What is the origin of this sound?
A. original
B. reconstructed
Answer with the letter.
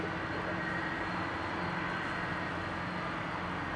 A